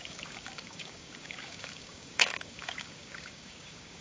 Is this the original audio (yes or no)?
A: no